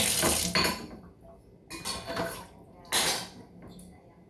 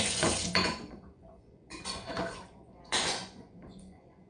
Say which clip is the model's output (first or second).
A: second